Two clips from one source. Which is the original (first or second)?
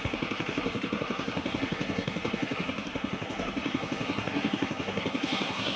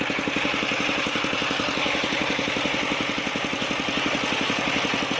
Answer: second